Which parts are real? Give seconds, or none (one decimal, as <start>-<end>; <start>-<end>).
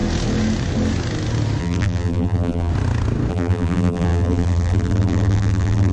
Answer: 0.0-1.6; 2.7-3.3